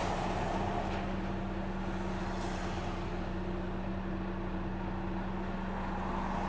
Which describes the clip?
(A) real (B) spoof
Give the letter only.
A